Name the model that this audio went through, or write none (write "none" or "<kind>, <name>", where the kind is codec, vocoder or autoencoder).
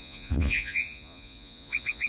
vocoder, Vocos